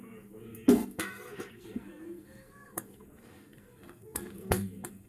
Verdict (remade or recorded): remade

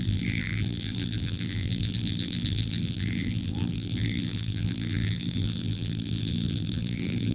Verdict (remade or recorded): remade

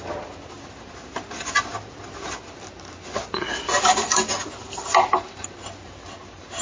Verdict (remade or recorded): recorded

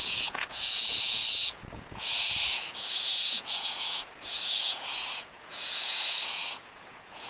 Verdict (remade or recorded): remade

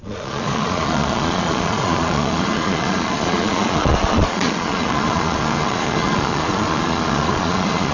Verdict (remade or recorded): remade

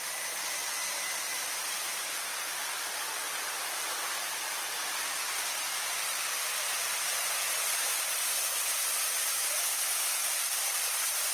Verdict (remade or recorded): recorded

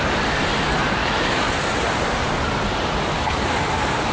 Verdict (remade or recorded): remade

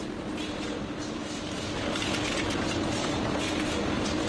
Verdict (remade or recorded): recorded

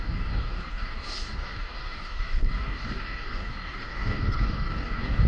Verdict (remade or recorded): remade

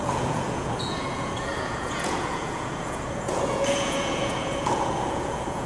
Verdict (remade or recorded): remade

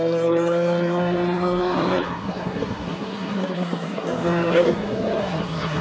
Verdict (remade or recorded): remade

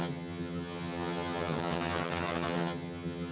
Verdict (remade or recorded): remade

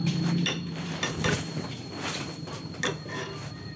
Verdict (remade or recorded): remade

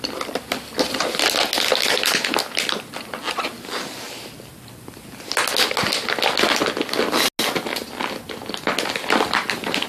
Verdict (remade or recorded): recorded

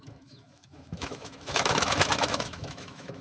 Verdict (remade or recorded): remade